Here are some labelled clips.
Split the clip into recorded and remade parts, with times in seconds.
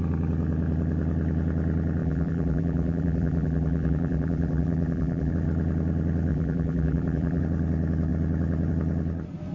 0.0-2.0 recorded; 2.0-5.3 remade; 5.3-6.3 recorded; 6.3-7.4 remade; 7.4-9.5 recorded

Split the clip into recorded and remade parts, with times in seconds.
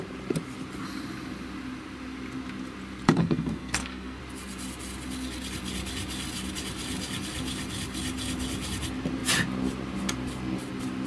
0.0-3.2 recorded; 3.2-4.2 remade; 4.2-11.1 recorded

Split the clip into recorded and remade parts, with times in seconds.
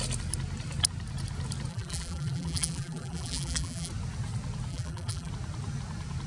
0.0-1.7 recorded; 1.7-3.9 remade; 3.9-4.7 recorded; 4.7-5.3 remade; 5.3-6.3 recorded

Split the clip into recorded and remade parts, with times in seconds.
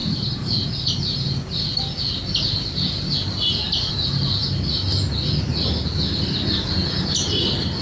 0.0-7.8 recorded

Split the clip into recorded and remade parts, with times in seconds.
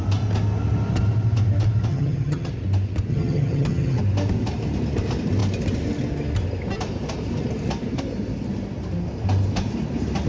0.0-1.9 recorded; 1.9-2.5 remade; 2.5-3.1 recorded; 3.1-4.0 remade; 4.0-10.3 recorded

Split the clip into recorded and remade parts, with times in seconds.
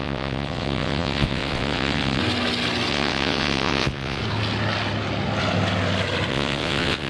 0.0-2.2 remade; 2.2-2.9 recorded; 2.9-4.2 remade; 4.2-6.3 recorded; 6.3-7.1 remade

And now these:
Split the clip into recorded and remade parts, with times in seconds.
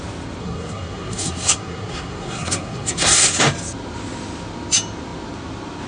0.0-0.4 recorded; 0.4-3.4 remade; 3.4-5.9 recorded